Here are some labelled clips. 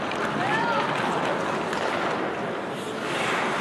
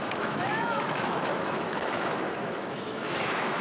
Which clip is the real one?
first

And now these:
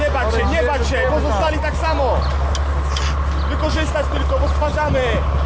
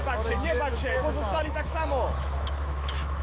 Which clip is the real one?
first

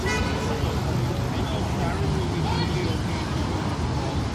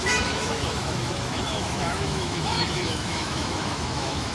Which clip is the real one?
first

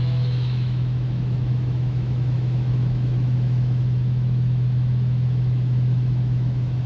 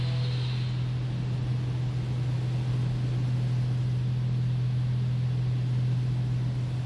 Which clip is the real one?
second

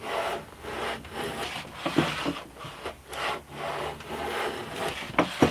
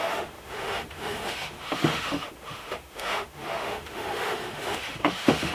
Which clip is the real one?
first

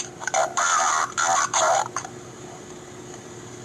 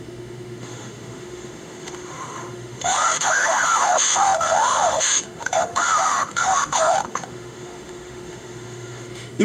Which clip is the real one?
first